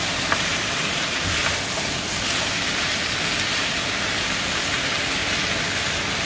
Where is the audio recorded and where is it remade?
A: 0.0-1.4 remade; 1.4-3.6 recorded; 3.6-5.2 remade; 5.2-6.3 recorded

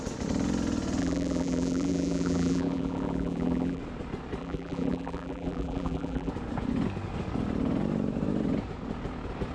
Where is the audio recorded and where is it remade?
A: 0.0-1.0 recorded; 1.0-3.8 remade; 3.8-4.4 recorded; 4.4-6.3 remade; 6.3-9.5 recorded

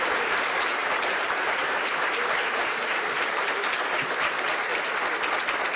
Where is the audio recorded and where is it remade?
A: 0.0-4.7 remade; 4.7-5.8 recorded

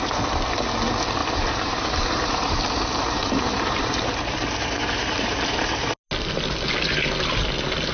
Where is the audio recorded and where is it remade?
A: 0.0-1.2 recorded; 1.2-5.9 remade; 5.9-7.9 recorded